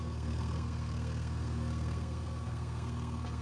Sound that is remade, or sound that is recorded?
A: remade